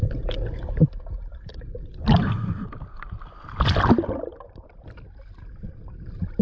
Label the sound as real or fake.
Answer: real